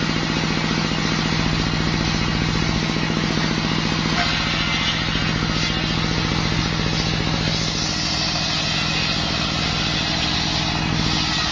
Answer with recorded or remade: recorded